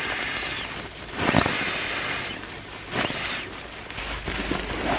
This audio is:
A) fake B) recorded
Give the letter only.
B